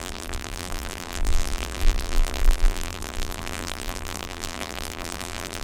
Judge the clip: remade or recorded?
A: remade